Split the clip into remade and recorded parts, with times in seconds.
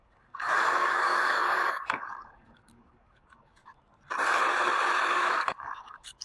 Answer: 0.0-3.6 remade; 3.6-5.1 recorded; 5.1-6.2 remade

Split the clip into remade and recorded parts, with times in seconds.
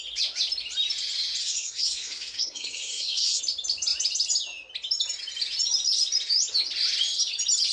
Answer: 0.0-1.4 recorded; 1.4-3.4 remade; 3.4-7.7 recorded